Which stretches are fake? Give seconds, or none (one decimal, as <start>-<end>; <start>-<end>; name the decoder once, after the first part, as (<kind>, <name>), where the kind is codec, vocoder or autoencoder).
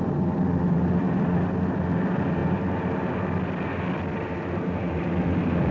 0.0-2.4 (vocoder, BigVGAN v2); 4.0-5.7